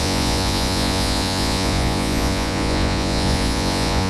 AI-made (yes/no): yes